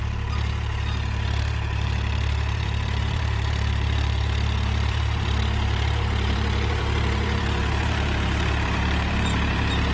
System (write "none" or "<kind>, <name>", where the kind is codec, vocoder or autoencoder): vocoder, BigVGAN v2